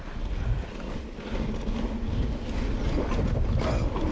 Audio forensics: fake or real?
real